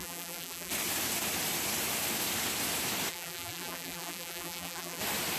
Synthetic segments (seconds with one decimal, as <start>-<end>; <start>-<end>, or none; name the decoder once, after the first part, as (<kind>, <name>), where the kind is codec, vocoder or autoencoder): 0.0-0.7 (vocoder, BigVGAN v2); 3.1-5.0